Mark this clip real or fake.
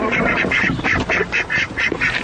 fake